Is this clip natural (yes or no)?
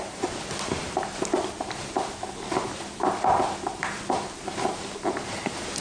yes